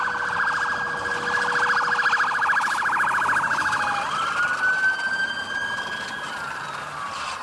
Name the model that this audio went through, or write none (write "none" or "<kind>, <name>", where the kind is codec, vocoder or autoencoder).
none